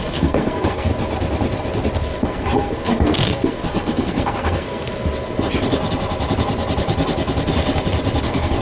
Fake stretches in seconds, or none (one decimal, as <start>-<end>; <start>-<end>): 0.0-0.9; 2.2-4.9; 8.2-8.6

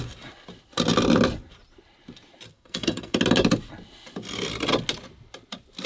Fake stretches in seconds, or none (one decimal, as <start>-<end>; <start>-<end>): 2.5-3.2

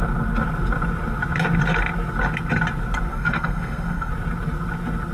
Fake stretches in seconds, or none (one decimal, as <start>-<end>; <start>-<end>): 3.1-4.1